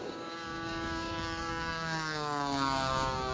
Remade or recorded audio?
remade